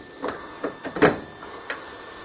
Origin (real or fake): real